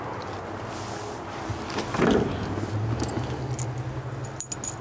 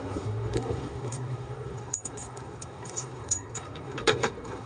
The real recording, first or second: first